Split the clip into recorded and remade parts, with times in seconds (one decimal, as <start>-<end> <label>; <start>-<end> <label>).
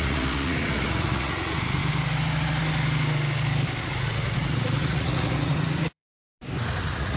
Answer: 0.0-1.8 remade; 1.8-3.8 recorded; 3.8-6.1 remade; 6.1-6.8 recorded; 6.8-7.2 remade